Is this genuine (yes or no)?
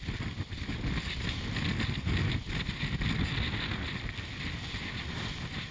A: yes